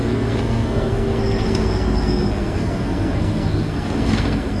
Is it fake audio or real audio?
fake